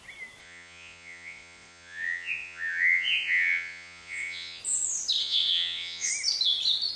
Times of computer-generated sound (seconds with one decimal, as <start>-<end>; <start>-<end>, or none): 0.4-4.6; 5.2-6.1